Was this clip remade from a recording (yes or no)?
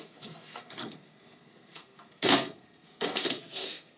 yes